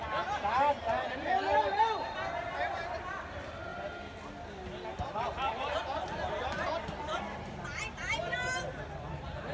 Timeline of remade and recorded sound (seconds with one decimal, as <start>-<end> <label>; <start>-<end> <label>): 0.0-9.5 recorded